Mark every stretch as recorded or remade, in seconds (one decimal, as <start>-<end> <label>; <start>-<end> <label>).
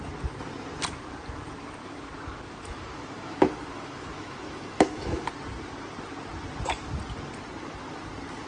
0.0-1.8 recorded; 1.8-5.3 remade; 5.3-8.5 recorded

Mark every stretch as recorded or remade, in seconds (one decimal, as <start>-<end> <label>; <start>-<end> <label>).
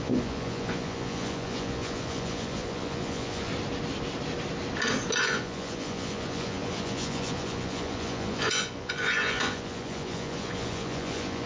0.0-3.5 remade; 3.5-5.2 recorded; 5.2-11.5 remade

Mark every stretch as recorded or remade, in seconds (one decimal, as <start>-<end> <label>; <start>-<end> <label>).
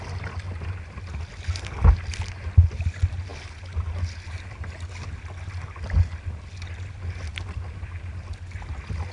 0.0-9.1 recorded